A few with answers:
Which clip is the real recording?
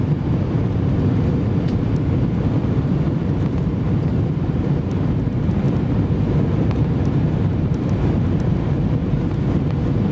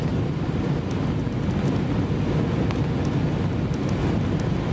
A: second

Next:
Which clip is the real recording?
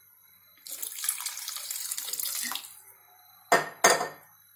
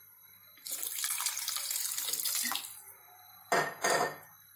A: first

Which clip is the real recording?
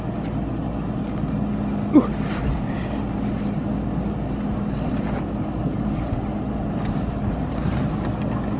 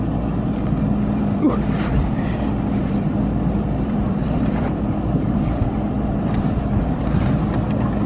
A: first